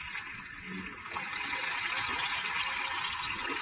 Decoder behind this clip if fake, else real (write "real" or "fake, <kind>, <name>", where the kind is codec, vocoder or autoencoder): real